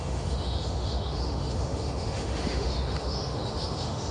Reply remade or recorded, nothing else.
remade